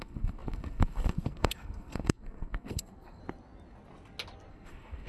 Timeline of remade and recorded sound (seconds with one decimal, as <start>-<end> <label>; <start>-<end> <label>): 0.0-3.2 remade; 3.2-4.5 recorded; 4.5-5.1 remade